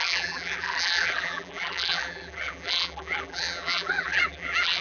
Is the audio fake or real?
fake